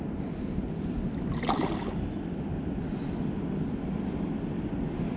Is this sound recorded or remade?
recorded